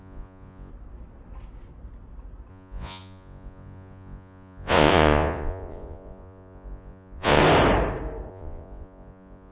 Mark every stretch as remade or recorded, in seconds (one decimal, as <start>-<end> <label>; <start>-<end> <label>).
0.0-0.7 remade; 0.7-2.5 recorded; 2.5-7.4 remade; 7.4-8.3 recorded; 8.3-9.5 remade